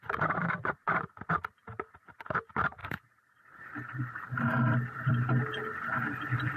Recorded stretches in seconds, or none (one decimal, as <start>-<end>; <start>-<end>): 0.0-2.8; 4.4-6.6